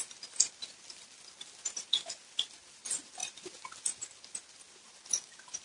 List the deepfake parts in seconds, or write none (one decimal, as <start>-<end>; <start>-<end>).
none